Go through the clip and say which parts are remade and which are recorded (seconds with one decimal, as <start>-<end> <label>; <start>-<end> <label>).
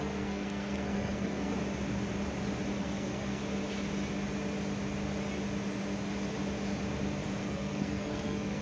0.0-1.5 remade; 1.5-2.8 recorded; 2.8-3.4 remade; 3.4-7.4 recorded; 7.4-8.6 remade